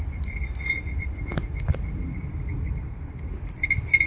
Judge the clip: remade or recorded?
recorded